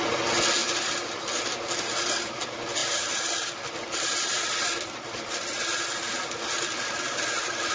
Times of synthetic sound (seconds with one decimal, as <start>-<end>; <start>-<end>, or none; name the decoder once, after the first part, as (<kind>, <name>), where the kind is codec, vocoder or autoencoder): 2.8-7.7 (vocoder, BigVGAN v2)